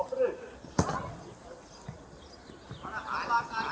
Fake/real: real